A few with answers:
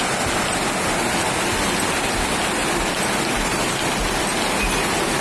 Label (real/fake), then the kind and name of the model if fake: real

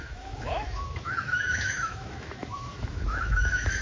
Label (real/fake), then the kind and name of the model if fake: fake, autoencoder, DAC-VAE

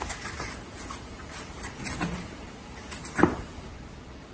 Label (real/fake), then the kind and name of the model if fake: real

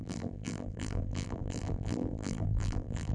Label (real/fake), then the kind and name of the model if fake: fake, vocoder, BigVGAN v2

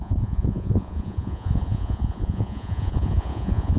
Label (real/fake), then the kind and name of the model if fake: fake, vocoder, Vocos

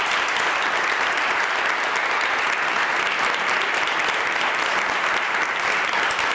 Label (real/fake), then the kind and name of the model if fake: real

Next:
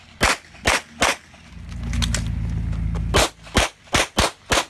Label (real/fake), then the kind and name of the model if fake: real